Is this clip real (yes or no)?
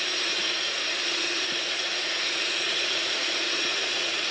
no